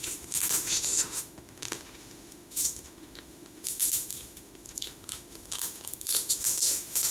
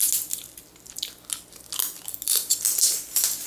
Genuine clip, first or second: second